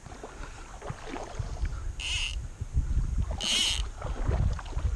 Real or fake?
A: real